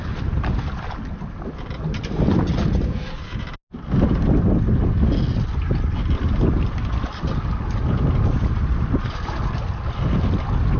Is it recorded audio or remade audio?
recorded